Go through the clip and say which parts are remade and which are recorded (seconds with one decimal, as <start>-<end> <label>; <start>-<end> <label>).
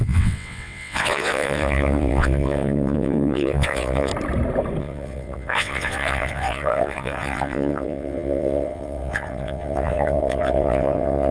0.0-4.1 remade; 4.1-4.8 recorded; 4.8-11.3 remade